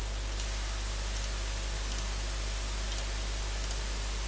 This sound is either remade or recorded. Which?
recorded